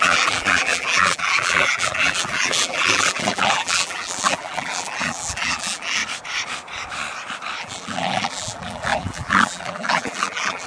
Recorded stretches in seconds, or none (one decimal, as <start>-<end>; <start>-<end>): 6.0-7.6